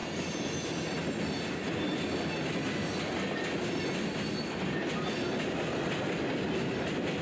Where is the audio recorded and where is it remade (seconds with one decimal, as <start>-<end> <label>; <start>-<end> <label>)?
0.0-7.2 recorded